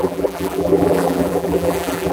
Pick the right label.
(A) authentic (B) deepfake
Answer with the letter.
B